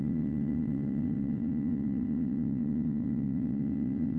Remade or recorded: remade